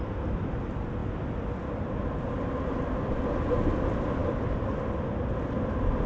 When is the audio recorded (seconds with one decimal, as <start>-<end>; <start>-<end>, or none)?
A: 0.0-6.1